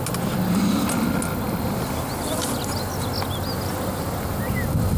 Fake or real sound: real